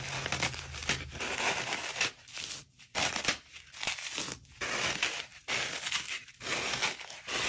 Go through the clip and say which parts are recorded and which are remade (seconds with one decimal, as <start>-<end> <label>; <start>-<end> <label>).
0.0-0.8 recorded; 0.8-1.8 remade; 1.8-5.3 recorded; 5.3-5.8 remade; 5.8-7.5 recorded